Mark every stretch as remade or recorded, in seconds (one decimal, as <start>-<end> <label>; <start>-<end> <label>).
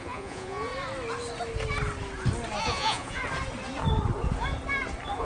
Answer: 0.0-0.7 remade; 0.7-2.6 recorded; 2.6-3.2 remade; 3.2-5.2 recorded